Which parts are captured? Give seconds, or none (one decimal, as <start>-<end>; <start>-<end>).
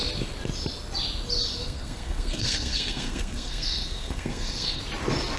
0.0-1.6; 4.8-5.4